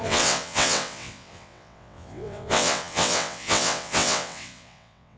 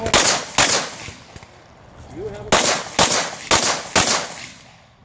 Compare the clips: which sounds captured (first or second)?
second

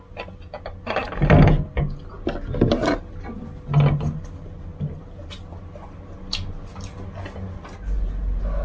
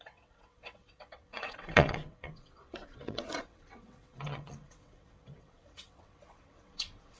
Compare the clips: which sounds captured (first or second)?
first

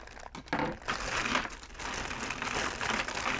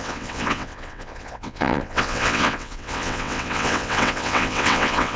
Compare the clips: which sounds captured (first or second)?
first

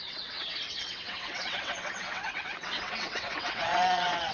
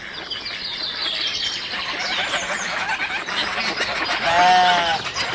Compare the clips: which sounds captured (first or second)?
second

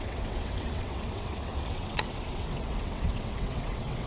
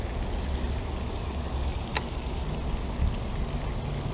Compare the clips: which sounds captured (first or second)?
second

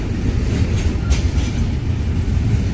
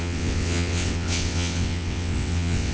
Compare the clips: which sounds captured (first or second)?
first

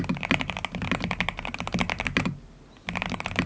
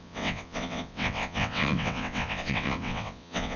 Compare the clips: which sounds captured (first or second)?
first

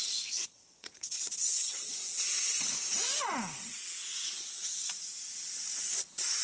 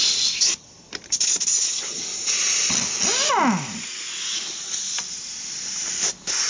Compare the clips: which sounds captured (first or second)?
second